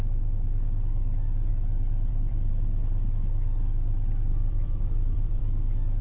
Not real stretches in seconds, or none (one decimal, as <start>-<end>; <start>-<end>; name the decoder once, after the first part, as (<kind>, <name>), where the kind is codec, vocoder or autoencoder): 1.5-2.5 (vocoder, BigVGAN v2); 4.3-5.4